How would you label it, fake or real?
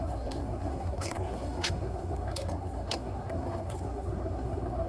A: fake